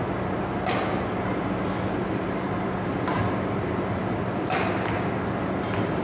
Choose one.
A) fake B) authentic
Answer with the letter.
B